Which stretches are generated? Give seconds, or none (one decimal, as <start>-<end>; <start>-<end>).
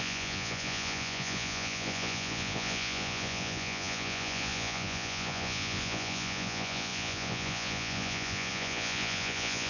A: 0.0-9.7